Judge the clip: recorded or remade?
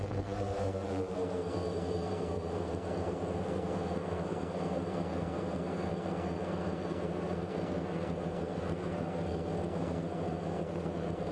remade